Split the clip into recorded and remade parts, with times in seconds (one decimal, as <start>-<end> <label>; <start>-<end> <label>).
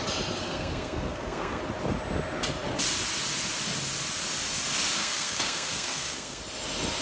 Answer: 0.0-0.4 recorded; 0.4-1.6 remade; 1.6-5.0 recorded; 5.0-6.4 remade; 6.4-7.0 recorded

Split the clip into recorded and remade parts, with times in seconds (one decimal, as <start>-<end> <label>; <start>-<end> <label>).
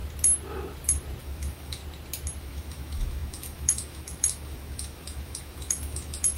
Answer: 0.0-1.2 recorded; 1.2-1.8 remade; 1.8-2.4 recorded; 2.4-6.4 remade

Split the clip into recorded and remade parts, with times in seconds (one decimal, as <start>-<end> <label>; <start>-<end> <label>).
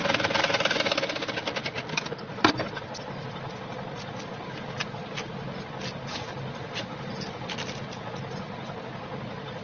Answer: 0.0-9.6 recorded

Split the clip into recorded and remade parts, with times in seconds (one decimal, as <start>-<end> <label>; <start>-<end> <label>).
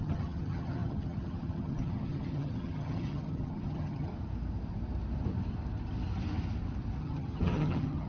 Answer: 0.0-4.1 remade; 4.1-7.0 recorded; 7.0-8.1 remade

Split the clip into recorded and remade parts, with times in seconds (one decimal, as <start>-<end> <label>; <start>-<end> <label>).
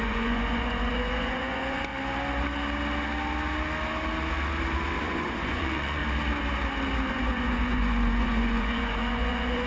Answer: 0.0-1.9 remade; 1.9-5.0 recorded; 5.0-6.0 remade; 6.0-7.1 recorded; 7.1-9.7 remade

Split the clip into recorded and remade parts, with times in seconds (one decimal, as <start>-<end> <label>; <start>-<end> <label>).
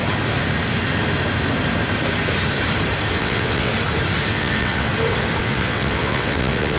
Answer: 0.0-3.2 recorded; 3.2-3.7 remade; 3.7-4.3 recorded; 4.3-4.9 remade; 4.9-5.4 recorded; 5.4-6.8 remade